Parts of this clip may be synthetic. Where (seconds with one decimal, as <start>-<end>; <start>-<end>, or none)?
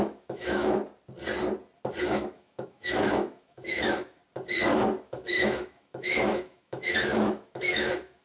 0.0-0.8; 2.0-4.2; 5.0-8.2